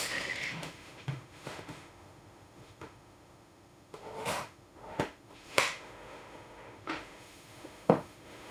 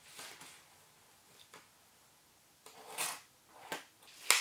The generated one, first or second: first